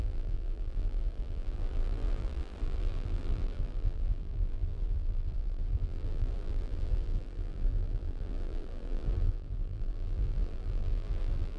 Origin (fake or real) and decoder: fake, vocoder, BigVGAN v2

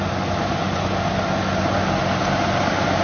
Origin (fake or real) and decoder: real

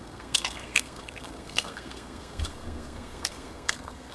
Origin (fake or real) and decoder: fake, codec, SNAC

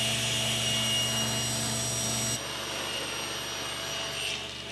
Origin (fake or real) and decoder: real